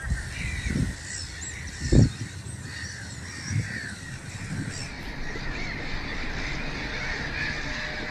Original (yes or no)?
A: yes